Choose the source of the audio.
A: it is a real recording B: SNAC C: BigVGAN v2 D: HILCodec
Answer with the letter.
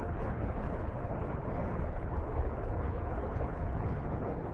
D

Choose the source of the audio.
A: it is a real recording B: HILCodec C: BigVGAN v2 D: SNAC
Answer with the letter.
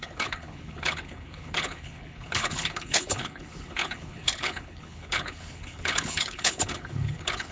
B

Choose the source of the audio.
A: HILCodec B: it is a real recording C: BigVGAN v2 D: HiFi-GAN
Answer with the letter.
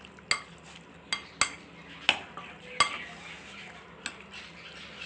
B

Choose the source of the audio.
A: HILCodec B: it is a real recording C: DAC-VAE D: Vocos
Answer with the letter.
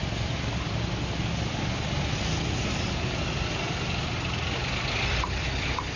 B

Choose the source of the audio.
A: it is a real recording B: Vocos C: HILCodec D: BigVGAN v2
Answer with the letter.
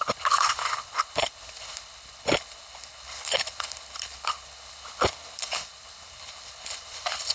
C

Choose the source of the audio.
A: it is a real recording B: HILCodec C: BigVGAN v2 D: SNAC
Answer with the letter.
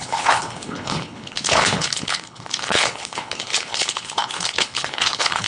B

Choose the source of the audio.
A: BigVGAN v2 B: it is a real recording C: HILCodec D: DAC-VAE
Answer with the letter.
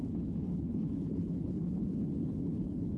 C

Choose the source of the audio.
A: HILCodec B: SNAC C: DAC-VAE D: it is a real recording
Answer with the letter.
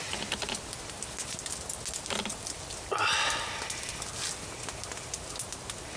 D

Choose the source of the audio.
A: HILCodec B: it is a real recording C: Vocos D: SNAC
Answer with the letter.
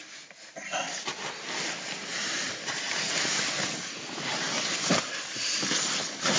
B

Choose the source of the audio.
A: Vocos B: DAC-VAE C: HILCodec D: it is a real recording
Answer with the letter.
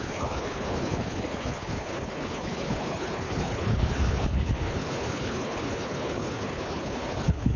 C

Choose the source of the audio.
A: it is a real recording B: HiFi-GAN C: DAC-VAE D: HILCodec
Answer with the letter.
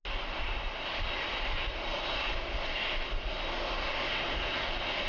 A